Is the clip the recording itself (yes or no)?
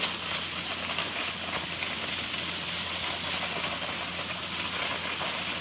yes